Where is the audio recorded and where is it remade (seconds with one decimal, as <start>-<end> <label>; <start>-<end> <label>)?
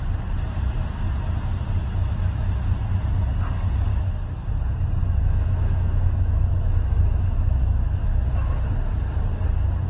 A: 0.0-1.8 recorded; 1.8-2.5 remade; 2.5-3.9 recorded; 3.9-4.5 remade; 4.5-5.0 recorded; 5.0-8.7 remade; 8.7-9.9 recorded